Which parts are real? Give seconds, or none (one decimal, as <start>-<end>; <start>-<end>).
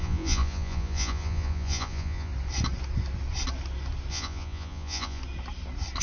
2.3-4.1; 5.2-6.0